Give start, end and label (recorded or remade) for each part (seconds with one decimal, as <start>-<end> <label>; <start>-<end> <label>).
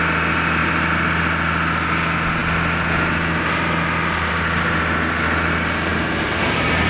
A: 0.0-6.9 recorded